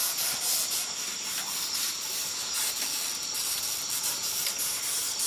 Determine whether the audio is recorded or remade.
recorded